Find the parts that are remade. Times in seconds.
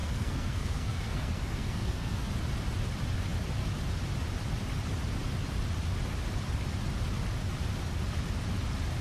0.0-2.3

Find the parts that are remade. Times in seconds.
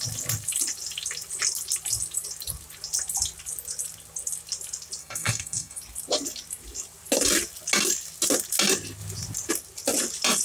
5.0-5.8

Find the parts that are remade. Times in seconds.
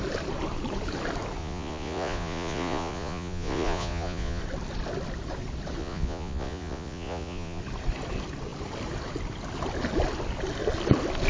1.4-4.4; 5.8-7.6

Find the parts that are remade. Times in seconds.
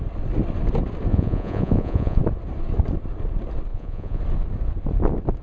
1.1-2.2; 3.7-4.2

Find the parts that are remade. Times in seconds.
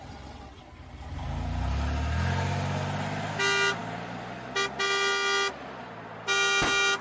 0.0-0.6